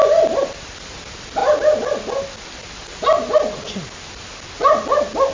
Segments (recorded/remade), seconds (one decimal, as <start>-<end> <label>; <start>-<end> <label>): 0.0-5.3 recorded